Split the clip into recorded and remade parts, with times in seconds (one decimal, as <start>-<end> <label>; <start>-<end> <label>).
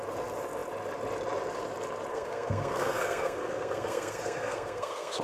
0.0-2.1 recorded; 2.1-5.2 remade